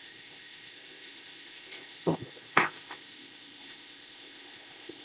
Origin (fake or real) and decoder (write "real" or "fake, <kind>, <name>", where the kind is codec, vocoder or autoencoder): fake, codec, ZipCodec